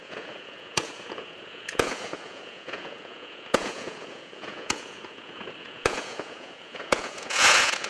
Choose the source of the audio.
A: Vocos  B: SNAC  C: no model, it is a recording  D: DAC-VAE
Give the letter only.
A